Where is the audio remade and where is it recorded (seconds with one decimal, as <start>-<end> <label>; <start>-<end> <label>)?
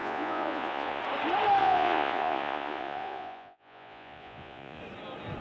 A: 0.0-1.0 remade; 1.0-1.6 recorded; 1.6-4.8 remade; 4.8-5.4 recorded